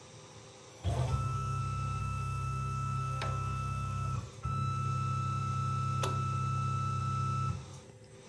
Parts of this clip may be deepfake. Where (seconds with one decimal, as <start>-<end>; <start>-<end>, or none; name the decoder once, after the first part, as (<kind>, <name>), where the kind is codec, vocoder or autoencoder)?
0.7-1.6 (codec, SNAC); 2.0-4.3